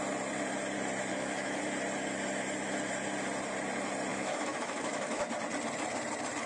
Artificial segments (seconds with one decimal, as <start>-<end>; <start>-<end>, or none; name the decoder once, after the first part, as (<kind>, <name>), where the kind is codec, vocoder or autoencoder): 1.1-1.6 (autoencoder, DAC-VAE); 4.1-5.3